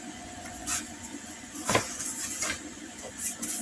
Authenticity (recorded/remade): remade